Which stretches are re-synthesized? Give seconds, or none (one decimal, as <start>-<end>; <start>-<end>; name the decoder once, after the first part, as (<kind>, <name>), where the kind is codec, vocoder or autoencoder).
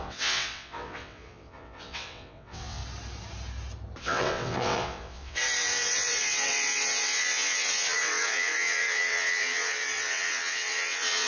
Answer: 0.0-2.8 (vocoder, WaveNeXt); 4.0-11.3